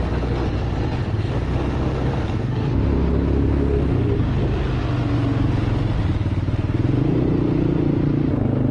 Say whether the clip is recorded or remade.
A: recorded